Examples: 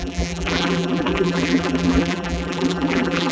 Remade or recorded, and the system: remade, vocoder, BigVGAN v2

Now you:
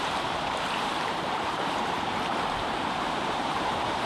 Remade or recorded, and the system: remade, vocoder, BigVGAN v2